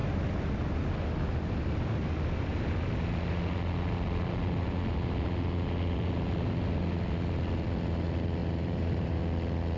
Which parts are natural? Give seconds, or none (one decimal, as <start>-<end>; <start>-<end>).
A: 0.0-8.4; 9.2-9.8